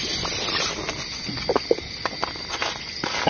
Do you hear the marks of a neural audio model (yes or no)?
no